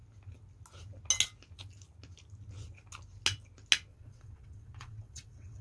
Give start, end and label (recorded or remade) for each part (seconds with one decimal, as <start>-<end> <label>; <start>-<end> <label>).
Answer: 0.0-3.9 recorded; 3.9-5.6 remade